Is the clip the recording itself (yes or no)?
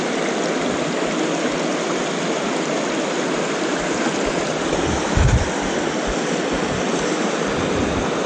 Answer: yes